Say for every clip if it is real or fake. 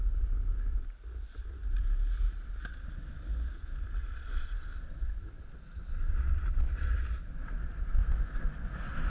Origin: real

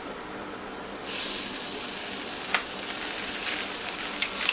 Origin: real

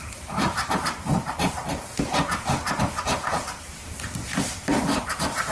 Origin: fake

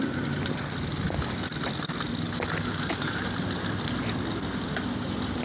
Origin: real